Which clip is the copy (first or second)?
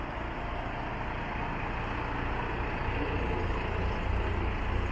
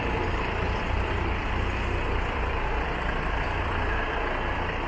second